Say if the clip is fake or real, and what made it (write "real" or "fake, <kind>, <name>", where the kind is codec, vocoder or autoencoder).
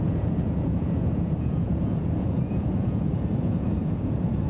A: fake, vocoder, Vocos